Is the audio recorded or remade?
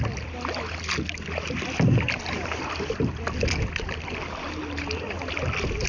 recorded